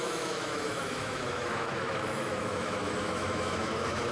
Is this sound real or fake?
fake